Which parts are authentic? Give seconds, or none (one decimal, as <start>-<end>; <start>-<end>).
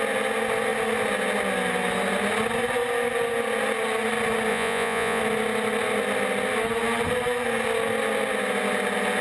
0.0-4.5; 5.2-9.2